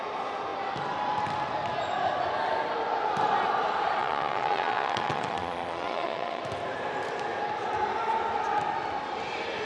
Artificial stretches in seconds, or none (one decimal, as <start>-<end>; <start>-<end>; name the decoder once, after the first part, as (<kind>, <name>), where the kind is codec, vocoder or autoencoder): 4.0-6.4 (vocoder, Vocos)